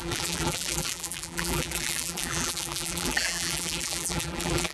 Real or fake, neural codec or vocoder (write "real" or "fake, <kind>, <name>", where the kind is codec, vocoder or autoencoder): fake, vocoder, BigVGAN v2